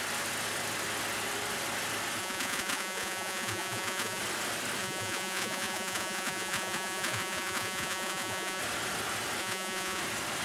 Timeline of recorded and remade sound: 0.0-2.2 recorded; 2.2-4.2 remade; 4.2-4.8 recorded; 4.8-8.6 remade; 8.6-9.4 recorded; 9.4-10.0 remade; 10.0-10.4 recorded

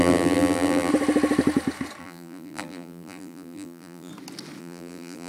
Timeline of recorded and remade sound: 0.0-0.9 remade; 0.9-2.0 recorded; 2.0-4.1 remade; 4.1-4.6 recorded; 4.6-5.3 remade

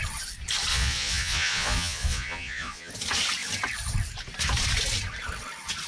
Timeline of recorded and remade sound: 0.0-0.7 recorded; 0.7-2.9 remade; 2.9-5.9 recorded

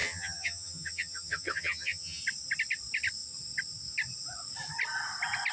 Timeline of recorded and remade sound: 0.0-2.2 remade; 2.2-5.5 recorded

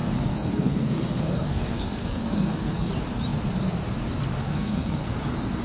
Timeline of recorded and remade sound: 0.0-2.9 remade; 2.9-4.4 recorded; 4.4-5.1 remade; 5.1-5.6 recorded